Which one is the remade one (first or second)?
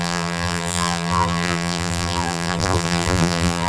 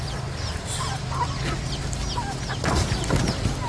first